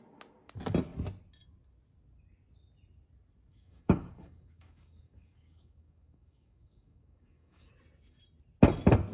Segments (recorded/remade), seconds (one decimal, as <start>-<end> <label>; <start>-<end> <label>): 0.0-3.5 recorded; 3.5-7.7 remade; 7.7-9.1 recorded